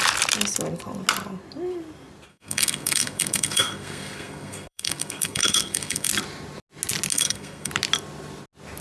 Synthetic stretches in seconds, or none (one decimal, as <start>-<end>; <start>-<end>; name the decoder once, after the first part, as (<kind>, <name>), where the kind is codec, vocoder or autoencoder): 2.3-6.1 (codec, SNAC); 7.1-7.7